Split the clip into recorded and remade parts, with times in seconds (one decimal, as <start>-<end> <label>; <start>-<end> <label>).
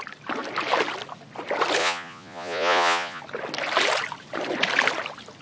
0.0-1.8 recorded; 1.8-3.2 remade; 3.2-5.4 recorded